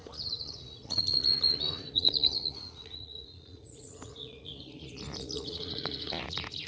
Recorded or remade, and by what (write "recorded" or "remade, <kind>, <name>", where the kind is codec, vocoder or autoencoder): remade, vocoder, Vocos